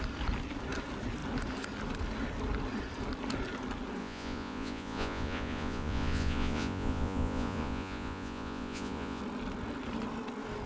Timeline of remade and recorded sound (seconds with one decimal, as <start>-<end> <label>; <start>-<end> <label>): 0.0-4.0 recorded; 4.0-9.2 remade; 9.2-10.7 recorded